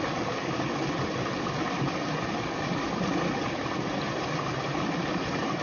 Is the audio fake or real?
real